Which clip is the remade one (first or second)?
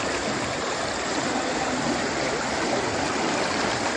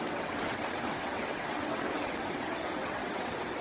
second